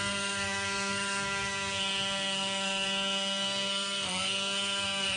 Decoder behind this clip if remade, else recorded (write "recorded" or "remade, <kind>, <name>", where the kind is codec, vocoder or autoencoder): remade, codec, SNAC